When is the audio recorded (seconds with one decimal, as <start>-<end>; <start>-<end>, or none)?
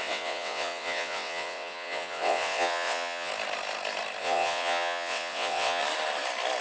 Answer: 3.3-4.2; 5.8-6.6